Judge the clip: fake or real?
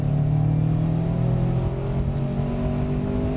real